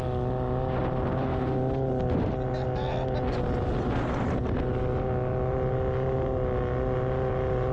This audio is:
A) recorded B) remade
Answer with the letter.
A